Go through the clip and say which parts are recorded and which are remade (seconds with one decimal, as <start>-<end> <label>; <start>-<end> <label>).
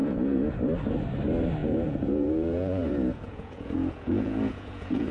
0.0-0.5 remade; 0.5-1.6 recorded; 1.6-5.1 remade